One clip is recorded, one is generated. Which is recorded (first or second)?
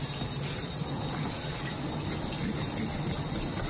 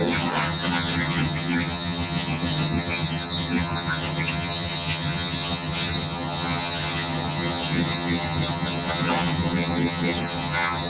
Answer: first